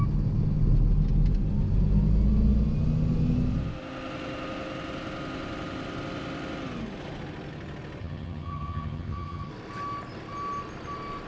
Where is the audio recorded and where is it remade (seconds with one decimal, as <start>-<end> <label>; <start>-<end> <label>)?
0.0-8.0 recorded; 8.0-9.5 remade; 9.5-11.3 recorded